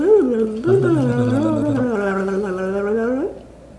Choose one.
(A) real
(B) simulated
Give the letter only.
A